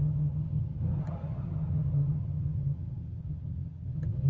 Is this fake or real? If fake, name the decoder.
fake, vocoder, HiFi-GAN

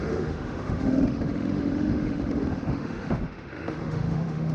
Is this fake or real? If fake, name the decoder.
fake, autoencoder, DAC-VAE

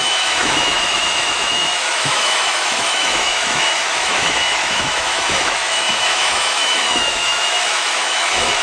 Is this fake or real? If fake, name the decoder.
fake, autoencoder, DAC-VAE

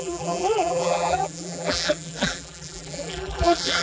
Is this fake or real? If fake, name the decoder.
fake, vocoder, BigVGAN v2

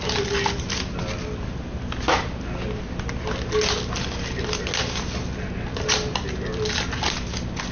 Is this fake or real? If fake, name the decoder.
real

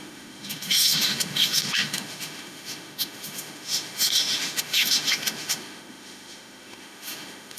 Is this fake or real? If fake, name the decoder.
fake, autoencoder, DAC-VAE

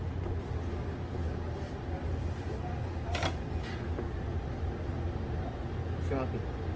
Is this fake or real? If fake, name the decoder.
real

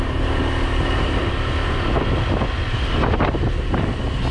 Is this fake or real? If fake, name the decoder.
real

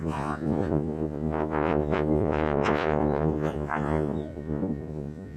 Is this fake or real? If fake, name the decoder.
fake, vocoder, Vocos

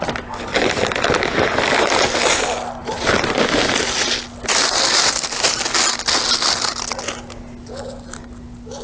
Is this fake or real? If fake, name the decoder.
real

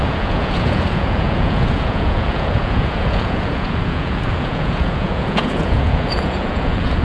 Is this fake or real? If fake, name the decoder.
fake, vocoder, Vocos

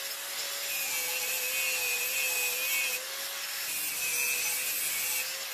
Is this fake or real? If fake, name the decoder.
real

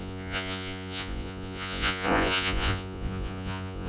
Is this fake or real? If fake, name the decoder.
fake, vocoder, Vocos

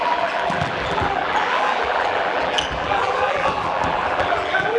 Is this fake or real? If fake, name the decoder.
fake, vocoder, BigVGAN v2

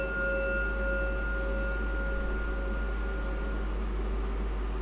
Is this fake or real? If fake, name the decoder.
real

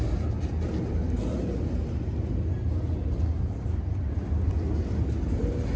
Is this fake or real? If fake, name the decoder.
real